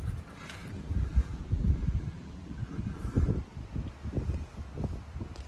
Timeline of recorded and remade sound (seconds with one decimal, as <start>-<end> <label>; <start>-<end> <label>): 0.0-0.6 recorded; 0.6-3.0 remade; 3.0-5.5 recorded